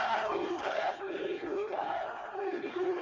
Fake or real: fake